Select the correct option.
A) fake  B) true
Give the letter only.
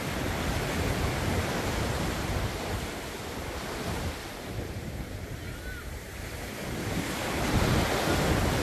A